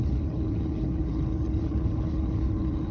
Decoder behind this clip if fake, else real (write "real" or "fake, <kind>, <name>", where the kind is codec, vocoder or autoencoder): fake, codec, HILCodec